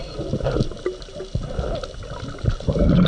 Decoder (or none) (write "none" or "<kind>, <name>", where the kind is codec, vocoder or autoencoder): none